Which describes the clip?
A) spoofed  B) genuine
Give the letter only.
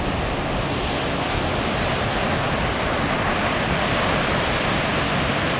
B